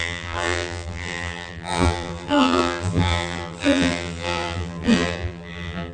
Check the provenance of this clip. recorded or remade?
remade